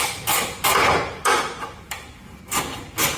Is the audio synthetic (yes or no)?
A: no